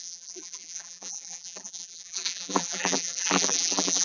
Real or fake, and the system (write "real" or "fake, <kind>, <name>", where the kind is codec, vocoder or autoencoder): fake, vocoder, BigVGAN v2